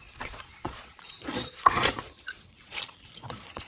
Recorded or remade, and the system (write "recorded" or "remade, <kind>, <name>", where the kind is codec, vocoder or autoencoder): remade, vocoder, Vocos